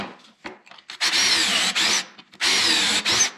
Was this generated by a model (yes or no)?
no